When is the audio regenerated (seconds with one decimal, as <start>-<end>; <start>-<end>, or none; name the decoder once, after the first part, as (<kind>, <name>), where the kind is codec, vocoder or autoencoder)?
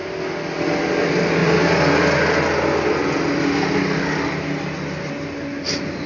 none